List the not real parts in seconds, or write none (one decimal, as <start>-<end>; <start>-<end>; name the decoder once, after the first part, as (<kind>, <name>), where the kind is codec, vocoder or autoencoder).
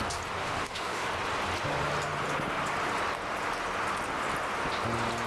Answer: 0.4-1.1 (autoencoder, DAC-VAE)